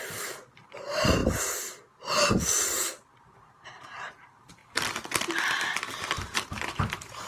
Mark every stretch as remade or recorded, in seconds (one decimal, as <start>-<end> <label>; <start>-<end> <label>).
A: 0.0-1.2 remade; 1.2-3.1 recorded; 3.1-4.6 remade; 4.6-6.0 recorded; 6.0-7.3 remade